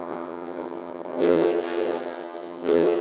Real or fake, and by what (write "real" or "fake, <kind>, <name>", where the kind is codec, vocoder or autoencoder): fake, vocoder, HiFi-GAN